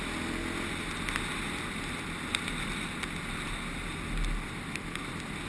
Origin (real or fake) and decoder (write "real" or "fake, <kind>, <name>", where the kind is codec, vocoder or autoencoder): real